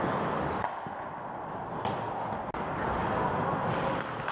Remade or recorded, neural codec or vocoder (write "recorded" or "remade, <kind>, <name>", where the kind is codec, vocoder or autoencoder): recorded